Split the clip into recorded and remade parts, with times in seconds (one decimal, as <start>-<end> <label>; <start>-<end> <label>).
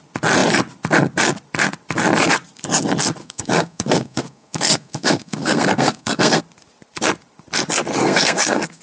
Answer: 0.0-3.2 recorded; 3.2-6.4 remade; 6.4-8.0 recorded; 8.0-8.8 remade